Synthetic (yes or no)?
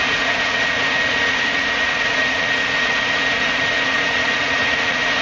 yes